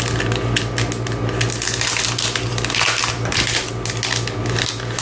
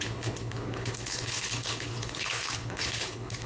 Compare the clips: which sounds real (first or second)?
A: first